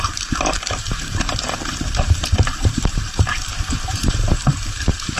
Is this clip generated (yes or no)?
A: yes